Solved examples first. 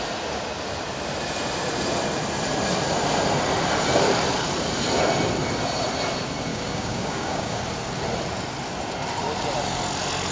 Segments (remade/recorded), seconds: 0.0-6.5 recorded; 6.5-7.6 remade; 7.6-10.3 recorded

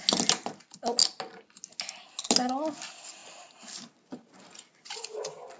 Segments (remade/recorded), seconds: 0.0-5.6 recorded

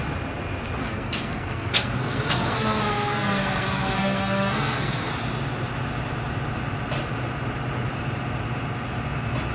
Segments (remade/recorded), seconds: 0.0-0.8 recorded; 0.8-5.1 remade; 5.1-9.5 recorded

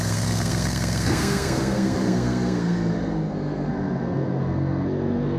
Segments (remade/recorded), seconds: 0.0-5.4 remade

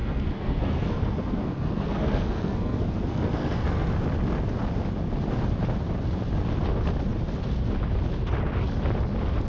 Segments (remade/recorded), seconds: 0.0-3.9 remade; 3.9-9.5 recorded

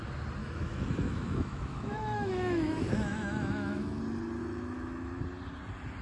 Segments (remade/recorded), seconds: 0.0-0.4 recorded; 0.4-4.0 remade; 4.0-4.4 recorded; 4.4-5.2 remade; 5.2-6.0 recorded

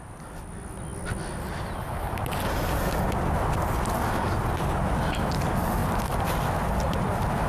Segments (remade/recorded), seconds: 0.0-7.5 recorded